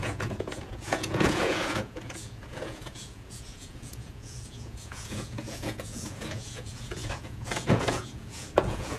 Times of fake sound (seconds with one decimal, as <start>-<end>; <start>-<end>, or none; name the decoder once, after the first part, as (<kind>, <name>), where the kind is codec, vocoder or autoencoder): 0.0-9.0 (vocoder, Vocos)